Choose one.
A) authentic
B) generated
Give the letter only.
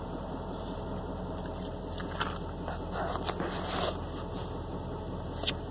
A